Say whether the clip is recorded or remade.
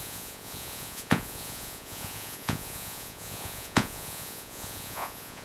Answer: remade